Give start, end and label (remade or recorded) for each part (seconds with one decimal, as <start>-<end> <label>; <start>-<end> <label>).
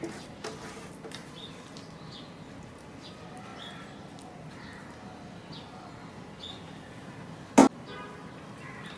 0.0-9.0 recorded